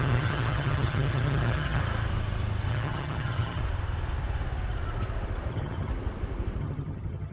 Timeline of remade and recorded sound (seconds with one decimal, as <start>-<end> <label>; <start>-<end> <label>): 0.0-1.8 remade; 1.8-2.7 recorded; 2.7-3.6 remade; 3.6-5.5 recorded; 5.5-5.9 remade; 5.9-6.6 recorded; 6.6-7.3 remade

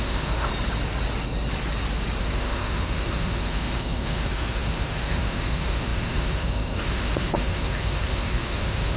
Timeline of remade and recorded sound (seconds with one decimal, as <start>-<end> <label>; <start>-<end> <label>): 0.0-0.5 remade; 0.5-2.2 recorded; 2.2-9.0 remade

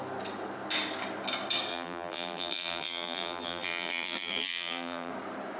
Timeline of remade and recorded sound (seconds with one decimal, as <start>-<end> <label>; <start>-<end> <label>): 0.0-1.7 recorded; 1.7-5.1 remade; 5.1-5.6 recorded

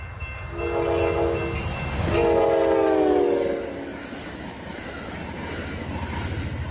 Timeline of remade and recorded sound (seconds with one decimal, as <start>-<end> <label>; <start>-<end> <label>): 0.0-4.0 recorded; 4.0-5.1 remade; 5.1-6.7 recorded

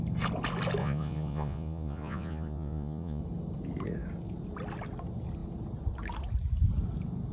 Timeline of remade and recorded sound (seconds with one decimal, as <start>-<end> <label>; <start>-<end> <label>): 0.0-0.8 recorded; 0.8-3.2 remade; 3.2-7.3 recorded

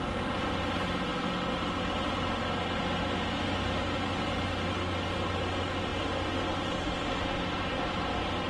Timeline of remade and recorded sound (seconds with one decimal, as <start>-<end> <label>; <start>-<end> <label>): 0.0-8.5 recorded

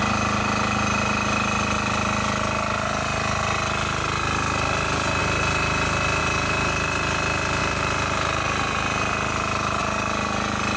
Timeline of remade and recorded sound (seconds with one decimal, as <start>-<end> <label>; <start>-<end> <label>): 0.0-7.6 recorded; 7.6-9.8 remade; 9.8-10.8 recorded